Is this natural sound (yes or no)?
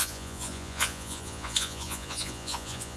no